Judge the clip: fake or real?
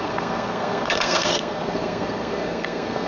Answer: fake